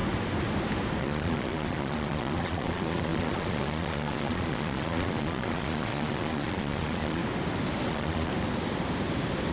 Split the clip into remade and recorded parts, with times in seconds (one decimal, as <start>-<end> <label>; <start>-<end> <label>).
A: 0.0-1.0 recorded; 1.0-7.2 remade; 7.2-7.9 recorded; 7.9-8.3 remade; 8.3-9.5 recorded